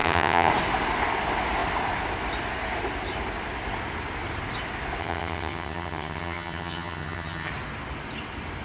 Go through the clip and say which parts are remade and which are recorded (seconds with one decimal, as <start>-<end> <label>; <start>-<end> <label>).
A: 0.0-0.5 remade; 0.5-5.0 recorded; 5.0-7.5 remade; 7.5-8.6 recorded